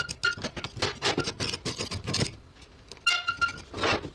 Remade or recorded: recorded